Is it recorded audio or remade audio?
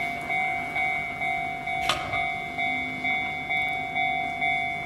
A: recorded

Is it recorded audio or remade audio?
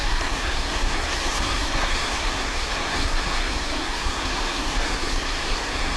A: remade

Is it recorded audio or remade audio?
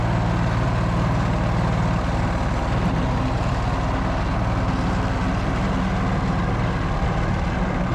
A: recorded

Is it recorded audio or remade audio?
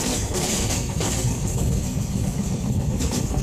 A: remade